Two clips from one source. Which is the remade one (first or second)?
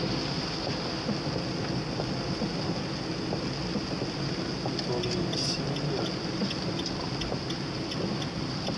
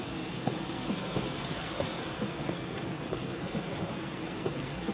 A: second